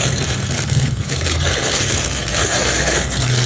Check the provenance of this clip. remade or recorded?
remade